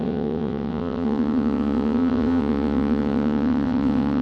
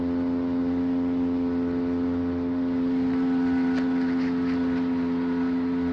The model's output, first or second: first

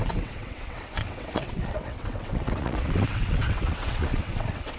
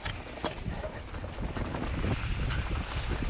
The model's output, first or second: first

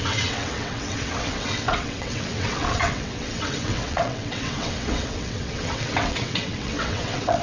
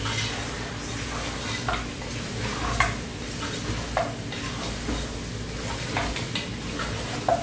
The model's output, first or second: first